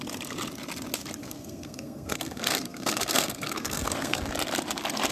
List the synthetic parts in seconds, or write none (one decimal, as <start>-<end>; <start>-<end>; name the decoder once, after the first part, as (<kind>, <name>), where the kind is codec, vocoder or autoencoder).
1.2-4.3 (codec, SNAC)